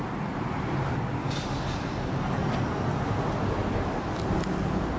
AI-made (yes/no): no